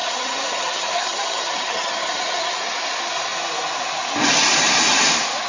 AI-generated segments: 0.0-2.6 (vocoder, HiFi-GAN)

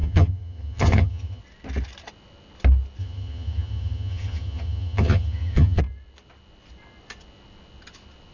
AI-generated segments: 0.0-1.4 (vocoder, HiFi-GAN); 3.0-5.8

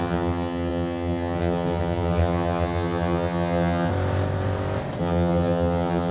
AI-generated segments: 0.0-3.9 (vocoder, HiFi-GAN); 5.0-6.1